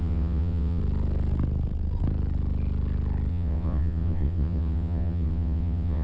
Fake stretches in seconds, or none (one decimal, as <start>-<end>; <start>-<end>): 0.0-0.8; 3.3-6.0